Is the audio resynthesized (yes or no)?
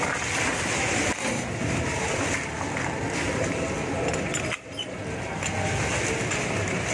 no